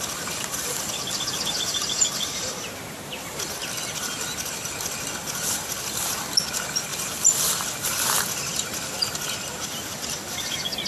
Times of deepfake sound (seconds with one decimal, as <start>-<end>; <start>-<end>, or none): none